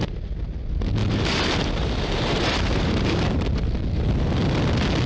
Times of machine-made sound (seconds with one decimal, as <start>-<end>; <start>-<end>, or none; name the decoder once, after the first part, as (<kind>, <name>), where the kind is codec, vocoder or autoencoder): 1.0-4.1 (vocoder, BigVGAN v2)